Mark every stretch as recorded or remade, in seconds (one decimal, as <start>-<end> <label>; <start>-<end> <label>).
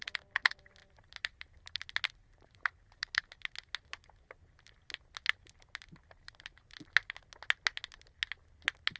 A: 0.0-0.8 recorded; 0.8-1.8 remade; 1.8-2.2 recorded; 2.2-3.3 remade; 3.3-6.0 recorded; 6.0-6.8 remade; 6.8-9.0 recorded